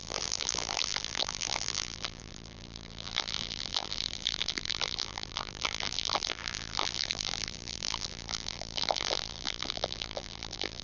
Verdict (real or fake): fake